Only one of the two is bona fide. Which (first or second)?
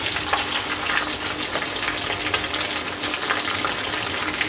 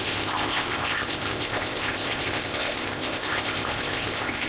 first